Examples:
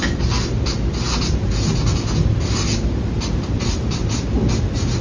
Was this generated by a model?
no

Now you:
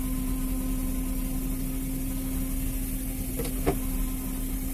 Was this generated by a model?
no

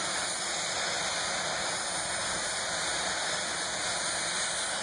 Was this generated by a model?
no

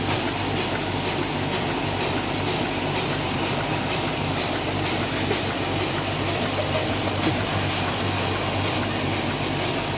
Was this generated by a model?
no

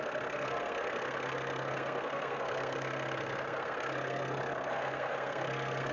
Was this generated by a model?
yes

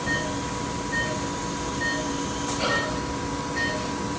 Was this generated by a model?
no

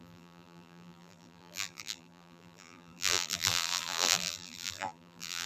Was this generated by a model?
yes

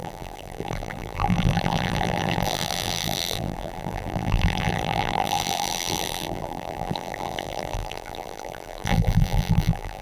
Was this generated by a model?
yes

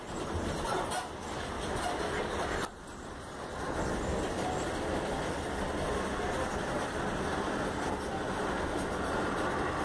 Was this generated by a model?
no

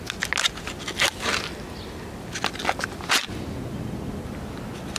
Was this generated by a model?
no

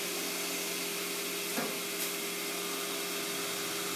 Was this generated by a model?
no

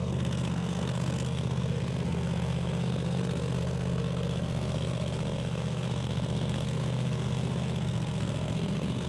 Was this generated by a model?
yes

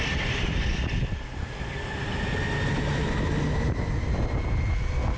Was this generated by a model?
no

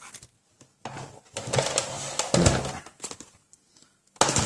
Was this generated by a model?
no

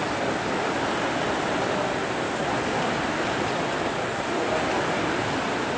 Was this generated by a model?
no